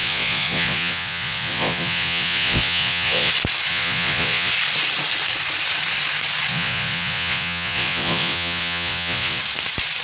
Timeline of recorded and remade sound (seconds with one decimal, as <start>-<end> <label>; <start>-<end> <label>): 0.0-3.3 remade; 3.3-3.7 recorded; 3.7-4.5 remade; 4.5-6.5 recorded; 6.5-9.4 remade; 9.4-10.0 recorded